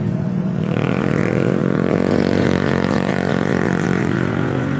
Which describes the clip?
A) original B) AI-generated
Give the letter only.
B